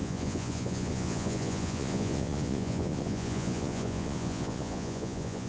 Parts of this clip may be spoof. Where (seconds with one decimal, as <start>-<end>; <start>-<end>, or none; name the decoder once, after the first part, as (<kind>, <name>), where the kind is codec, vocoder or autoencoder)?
0.0-5.5 (vocoder, Vocos)